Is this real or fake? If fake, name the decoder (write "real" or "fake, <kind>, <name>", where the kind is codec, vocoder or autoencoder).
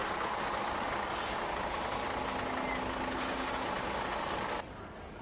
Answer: real